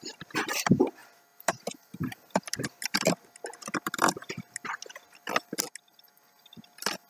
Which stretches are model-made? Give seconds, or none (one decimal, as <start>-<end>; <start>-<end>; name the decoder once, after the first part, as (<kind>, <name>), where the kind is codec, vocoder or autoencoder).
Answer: 1.0-4.4 (vocoder, BigVGAN v2)